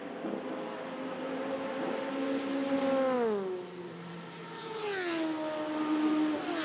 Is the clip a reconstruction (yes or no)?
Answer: no